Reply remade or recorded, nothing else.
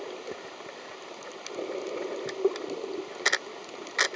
recorded